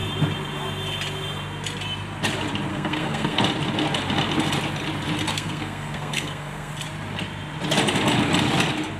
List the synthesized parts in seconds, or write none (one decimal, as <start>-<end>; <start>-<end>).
2.7-3.4; 5.3-6.7